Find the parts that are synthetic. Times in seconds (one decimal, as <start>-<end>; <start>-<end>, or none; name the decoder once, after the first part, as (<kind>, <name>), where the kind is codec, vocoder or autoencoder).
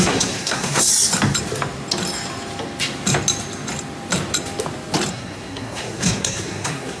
0.0-0.9 (codec, SNAC); 5.1-7.0